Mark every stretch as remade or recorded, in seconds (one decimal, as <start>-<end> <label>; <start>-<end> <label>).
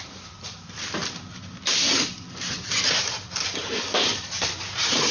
0.0-1.0 remade; 1.0-2.8 recorded; 2.8-4.1 remade; 4.1-4.6 recorded; 4.6-5.1 remade